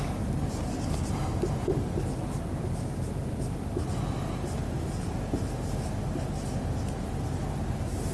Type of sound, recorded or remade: recorded